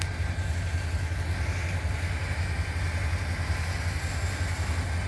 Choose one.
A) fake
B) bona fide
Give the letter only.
B